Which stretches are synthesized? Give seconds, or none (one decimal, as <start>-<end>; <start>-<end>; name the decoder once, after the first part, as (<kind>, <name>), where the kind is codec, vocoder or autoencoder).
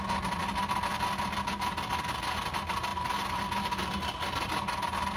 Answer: none